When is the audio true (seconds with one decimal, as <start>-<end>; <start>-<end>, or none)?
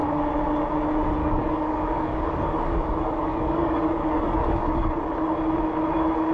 0.0-1.2; 5.0-6.3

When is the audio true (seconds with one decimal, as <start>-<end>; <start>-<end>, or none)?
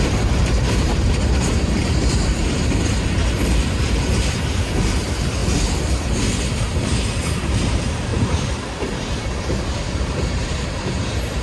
5.4-6.5